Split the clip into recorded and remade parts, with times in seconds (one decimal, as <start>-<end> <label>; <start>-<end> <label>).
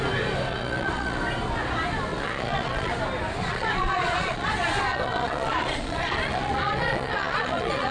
0.0-0.5 recorded; 0.5-1.2 remade; 1.2-2.1 recorded; 2.1-2.9 remade; 2.9-3.4 recorded; 3.4-4.5 remade; 4.5-4.9 recorded; 4.9-7.9 remade